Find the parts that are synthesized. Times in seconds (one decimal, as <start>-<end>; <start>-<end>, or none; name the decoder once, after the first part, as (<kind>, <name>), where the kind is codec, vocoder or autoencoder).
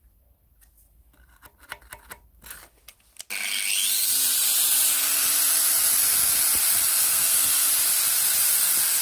6.9-7.7 (codec, SNAC)